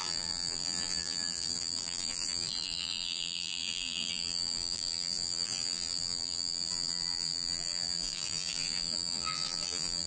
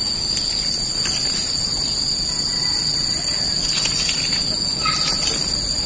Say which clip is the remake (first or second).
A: first